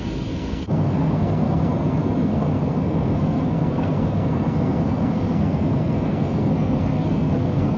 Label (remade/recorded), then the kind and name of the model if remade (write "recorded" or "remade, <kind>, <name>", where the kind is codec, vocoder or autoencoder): remade, codec, SNAC